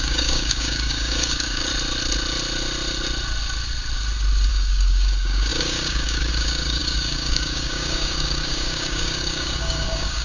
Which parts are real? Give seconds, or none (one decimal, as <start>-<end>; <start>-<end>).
1.7-4.5

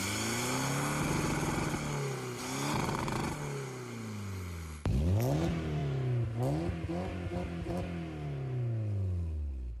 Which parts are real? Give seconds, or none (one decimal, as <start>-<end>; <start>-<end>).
0.0-9.8

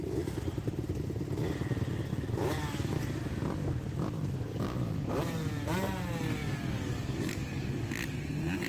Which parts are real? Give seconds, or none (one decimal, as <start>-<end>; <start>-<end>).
0.0-2.1; 3.0-4.5; 5.1-6.4; 7.9-8.7

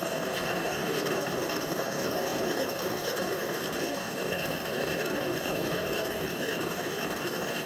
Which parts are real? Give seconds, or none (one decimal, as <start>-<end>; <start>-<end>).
none

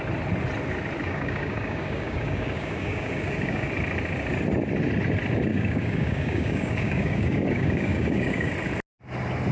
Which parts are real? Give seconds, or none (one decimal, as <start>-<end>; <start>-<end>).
0.0-1.0; 3.7-5.5; 8.5-9.5

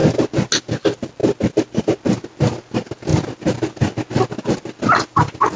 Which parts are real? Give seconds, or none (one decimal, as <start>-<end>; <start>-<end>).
0.0-5.6

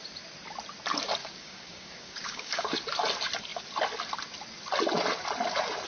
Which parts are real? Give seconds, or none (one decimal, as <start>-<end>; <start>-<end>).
0.0-1.2; 2.8-5.9